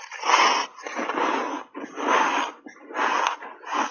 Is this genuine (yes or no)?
yes